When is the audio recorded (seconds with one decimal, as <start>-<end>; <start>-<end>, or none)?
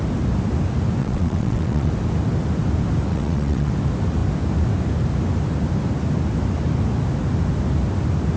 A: 0.0-1.0; 1.9-3.1; 3.7-8.4